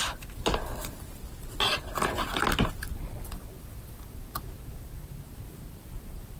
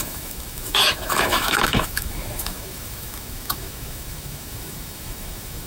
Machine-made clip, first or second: second